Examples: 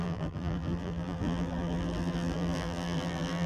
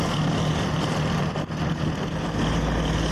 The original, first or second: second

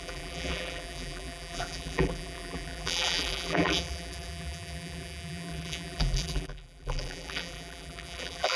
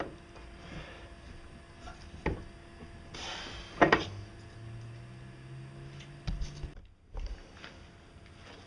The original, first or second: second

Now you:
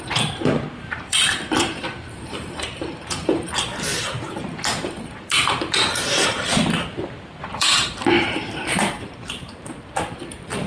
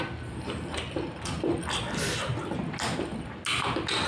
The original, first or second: second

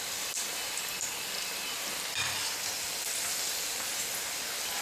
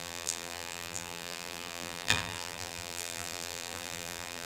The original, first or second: first